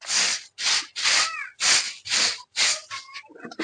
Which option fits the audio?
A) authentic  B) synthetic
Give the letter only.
A